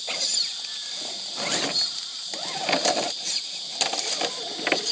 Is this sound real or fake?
real